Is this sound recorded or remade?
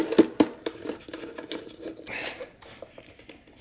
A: recorded